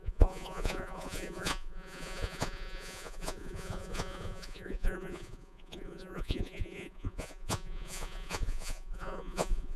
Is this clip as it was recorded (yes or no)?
no